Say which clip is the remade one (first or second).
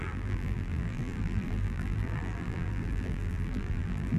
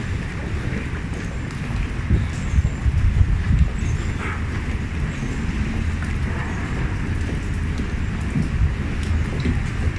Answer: first